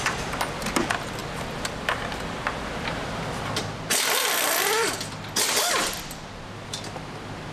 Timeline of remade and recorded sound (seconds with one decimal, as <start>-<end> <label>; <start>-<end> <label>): 0.0-7.5 recorded